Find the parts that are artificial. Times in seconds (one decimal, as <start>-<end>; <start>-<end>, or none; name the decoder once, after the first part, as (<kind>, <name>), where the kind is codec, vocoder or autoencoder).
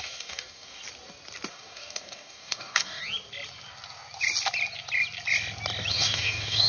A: 0.0-0.8 (codec, DAC); 1.5-3.0; 5.9-6.7